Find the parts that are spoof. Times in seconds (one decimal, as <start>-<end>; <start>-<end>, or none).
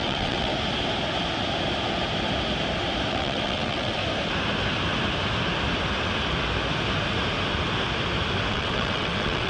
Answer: 0.0-0.5; 3.1-4.0; 8.5-9.5